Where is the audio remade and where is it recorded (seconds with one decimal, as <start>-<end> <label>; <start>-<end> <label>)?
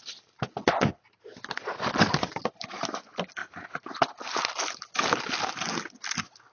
0.0-6.5 recorded